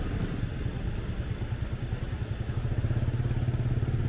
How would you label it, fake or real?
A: real